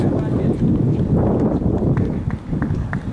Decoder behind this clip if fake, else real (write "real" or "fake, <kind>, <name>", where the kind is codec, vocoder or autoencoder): real